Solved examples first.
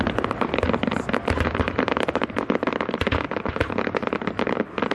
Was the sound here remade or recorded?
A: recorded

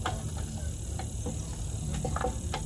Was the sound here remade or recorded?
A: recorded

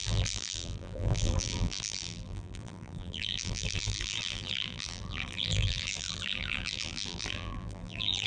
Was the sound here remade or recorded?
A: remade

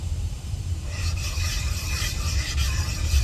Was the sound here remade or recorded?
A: remade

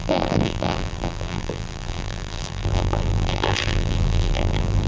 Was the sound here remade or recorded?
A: remade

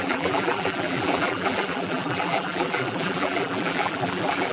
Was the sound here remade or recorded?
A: remade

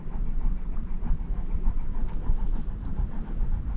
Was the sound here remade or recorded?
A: remade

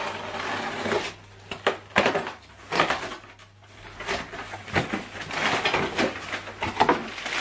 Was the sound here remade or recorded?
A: recorded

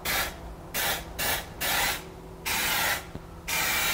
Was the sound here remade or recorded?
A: recorded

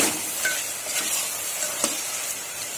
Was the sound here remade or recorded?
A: remade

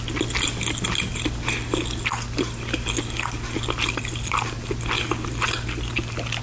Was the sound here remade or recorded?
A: recorded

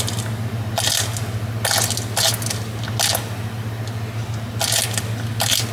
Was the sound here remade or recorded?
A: recorded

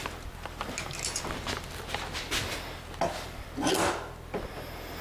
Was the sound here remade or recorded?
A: recorded